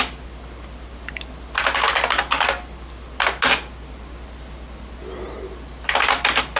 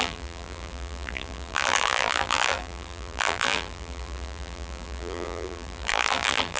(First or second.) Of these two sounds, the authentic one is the first